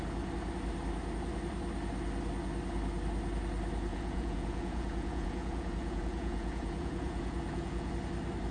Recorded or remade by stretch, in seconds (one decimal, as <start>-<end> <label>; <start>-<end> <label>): 0.0-3.9 recorded; 3.9-7.9 remade; 7.9-8.5 recorded